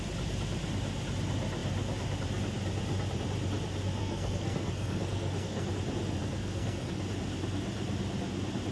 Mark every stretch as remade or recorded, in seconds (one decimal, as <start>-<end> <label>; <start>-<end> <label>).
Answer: 0.0-4.0 recorded; 4.0-5.7 remade; 5.7-6.2 recorded; 6.2-7.0 remade; 7.0-8.7 recorded